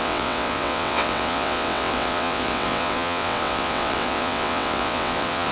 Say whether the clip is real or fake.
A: fake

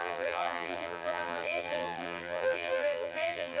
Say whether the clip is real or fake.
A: fake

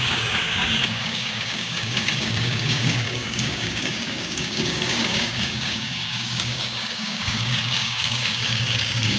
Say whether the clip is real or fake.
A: fake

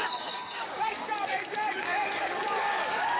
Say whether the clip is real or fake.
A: fake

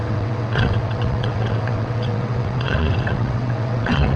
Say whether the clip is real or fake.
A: fake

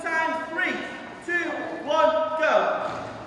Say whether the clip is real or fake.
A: real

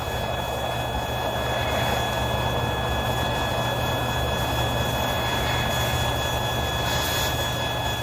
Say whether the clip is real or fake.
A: real